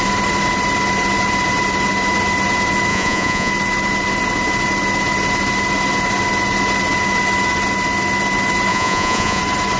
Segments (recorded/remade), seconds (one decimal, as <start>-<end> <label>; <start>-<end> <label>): 0.0-2.9 recorded; 2.9-3.5 remade; 3.5-8.7 recorded; 8.7-9.4 remade; 9.4-9.8 recorded